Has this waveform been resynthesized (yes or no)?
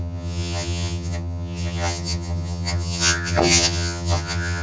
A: yes